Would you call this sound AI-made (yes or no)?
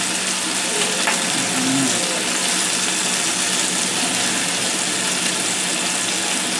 no